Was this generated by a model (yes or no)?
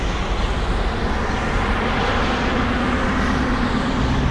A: no